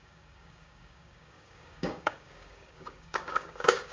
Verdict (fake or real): fake